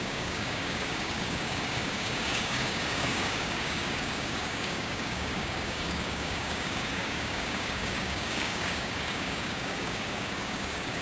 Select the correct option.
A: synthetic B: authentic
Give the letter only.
A